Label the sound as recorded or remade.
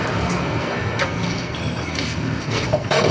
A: remade